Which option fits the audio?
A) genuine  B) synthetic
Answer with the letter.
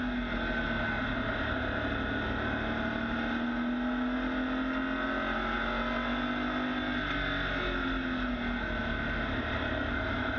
A